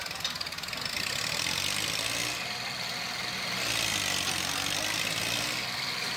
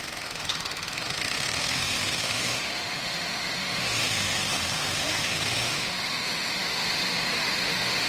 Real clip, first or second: first